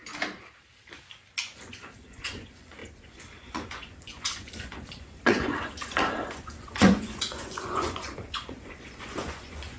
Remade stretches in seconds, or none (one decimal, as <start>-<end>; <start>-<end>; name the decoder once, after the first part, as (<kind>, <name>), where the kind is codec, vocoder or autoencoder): 1.4-9.8 (vocoder, Vocos)